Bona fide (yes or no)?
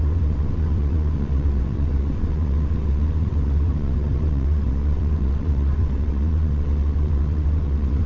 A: no